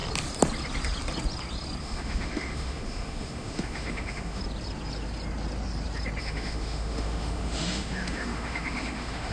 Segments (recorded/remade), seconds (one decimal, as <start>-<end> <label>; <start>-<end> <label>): 0.0-1.8 recorded; 1.8-4.4 remade; 4.4-6.2 recorded; 6.2-9.3 remade